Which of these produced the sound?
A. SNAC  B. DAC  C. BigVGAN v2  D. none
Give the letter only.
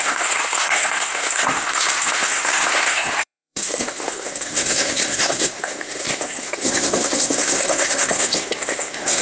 A